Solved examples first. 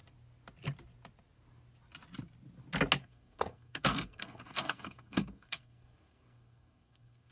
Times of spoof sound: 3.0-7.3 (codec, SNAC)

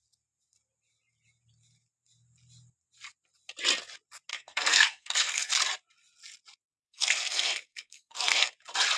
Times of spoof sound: 4.3-5.5 (codec, SNAC); 6.8-8.5

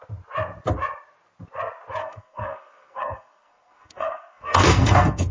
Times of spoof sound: 2.0-5.3 (codec, SNAC)

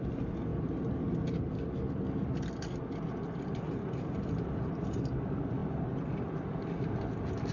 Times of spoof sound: none

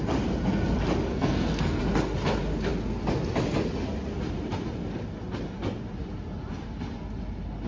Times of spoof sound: 1.1-1.8 (codec, SNAC)

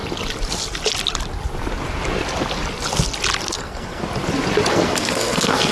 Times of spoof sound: 3.4-4.0 (codec, SNAC); 4.7-5.7